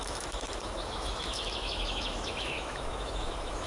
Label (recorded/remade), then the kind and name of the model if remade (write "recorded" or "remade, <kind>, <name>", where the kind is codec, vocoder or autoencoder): remade, autoencoder, DAC-VAE